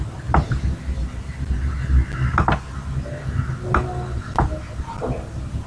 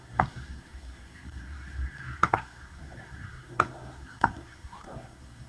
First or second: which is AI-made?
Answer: second